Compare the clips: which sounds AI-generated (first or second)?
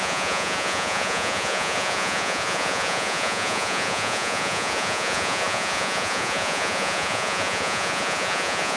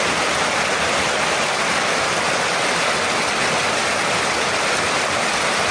first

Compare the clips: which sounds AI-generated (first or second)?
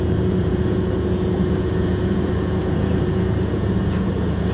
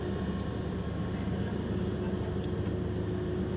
first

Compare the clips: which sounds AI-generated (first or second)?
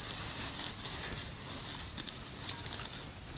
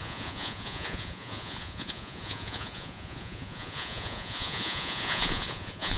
second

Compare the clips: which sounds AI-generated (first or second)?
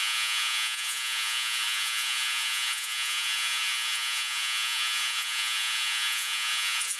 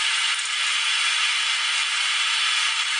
first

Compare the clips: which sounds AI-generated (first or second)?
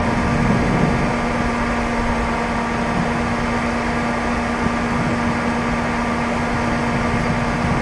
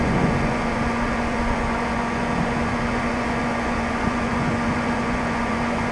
second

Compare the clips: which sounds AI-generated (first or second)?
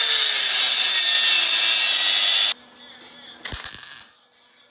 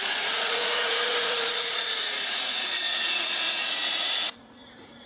second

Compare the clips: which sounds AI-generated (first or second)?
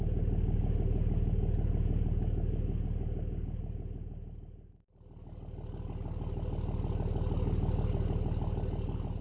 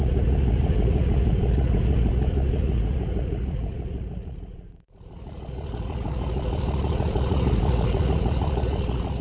second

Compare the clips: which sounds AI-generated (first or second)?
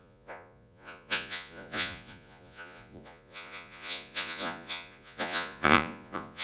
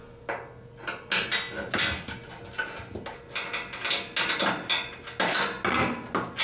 first